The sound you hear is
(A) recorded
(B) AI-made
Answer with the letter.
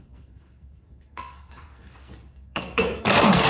B